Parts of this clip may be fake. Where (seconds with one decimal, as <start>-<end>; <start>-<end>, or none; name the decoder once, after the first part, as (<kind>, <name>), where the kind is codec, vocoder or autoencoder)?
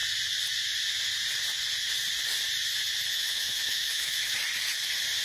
3.1-4.4 (autoencoder, DAC-VAE)